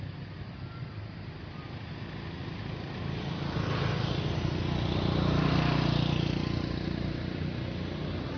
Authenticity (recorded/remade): recorded